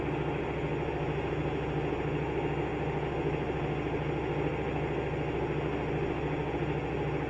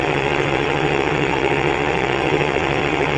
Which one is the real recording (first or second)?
first